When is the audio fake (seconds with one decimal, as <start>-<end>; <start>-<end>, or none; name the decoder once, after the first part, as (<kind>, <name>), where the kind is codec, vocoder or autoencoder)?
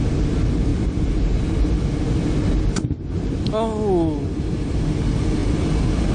none